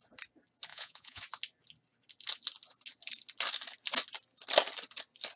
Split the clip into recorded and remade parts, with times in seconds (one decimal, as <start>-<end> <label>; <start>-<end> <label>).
0.0-0.7 recorded; 0.7-1.2 remade; 1.2-5.4 recorded